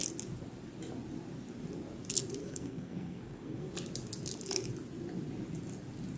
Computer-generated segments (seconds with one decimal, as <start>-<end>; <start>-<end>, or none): 2.4-3.7